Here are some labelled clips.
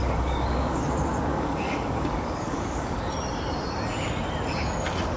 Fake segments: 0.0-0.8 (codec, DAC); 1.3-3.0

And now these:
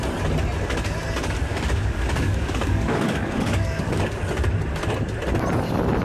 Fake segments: 1.5-4.2 (codec, DAC)

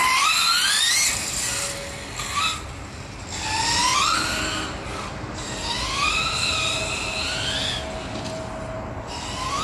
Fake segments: none

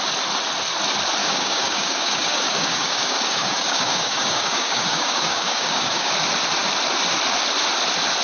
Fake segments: 1.2-6.1 (codec, DAC)

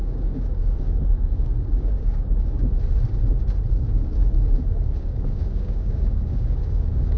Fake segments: 0.0-2.7 (codec, DAC); 3.7-7.2

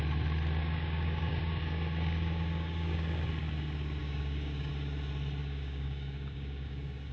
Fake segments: 0.6-3.3 (codec, DAC); 4.0-4.7; 5.4-7.1

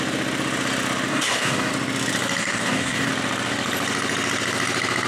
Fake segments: 1.1-1.7 (codec, DAC); 2.4-3.1

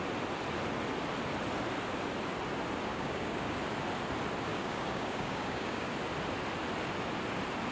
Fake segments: 2.9-3.5 (codec, DAC); 4.5-5.9